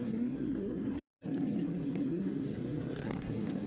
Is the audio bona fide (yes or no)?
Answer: no